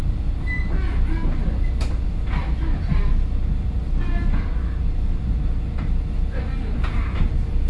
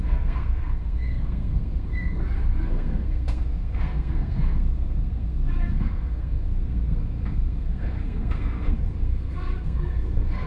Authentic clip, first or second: first